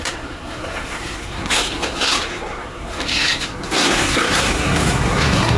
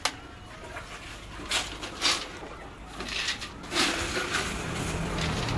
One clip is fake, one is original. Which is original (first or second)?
second